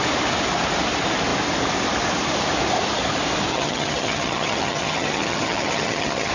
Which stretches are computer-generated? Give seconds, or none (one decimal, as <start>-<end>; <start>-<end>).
3.5-6.3